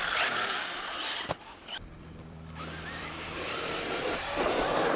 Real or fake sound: fake